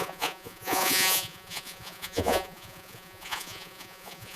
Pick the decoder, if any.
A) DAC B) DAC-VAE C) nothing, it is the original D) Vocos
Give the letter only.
D